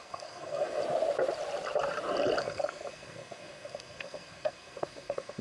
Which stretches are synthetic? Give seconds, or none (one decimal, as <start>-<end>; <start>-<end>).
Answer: 0.0-0.8; 2.4-5.4